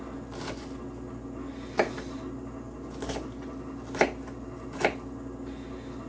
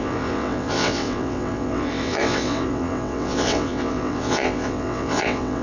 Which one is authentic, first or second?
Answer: first